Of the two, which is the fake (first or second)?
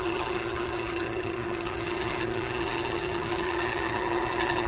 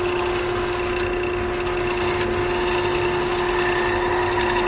first